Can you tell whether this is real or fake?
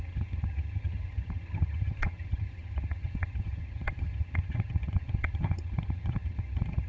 fake